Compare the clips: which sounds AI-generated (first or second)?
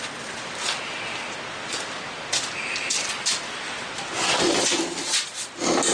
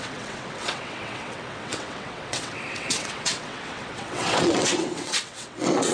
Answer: second